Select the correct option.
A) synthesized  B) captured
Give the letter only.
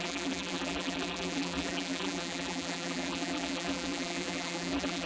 A